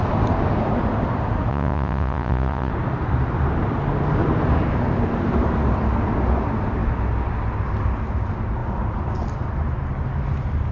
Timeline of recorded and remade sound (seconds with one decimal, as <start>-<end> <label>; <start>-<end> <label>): 0.0-1.5 recorded; 1.5-2.7 remade; 2.7-10.7 recorded